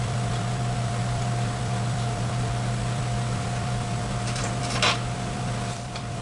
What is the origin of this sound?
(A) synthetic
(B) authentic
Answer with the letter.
A